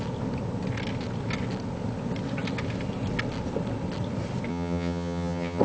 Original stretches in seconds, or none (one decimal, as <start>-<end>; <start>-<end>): 0.0-4.5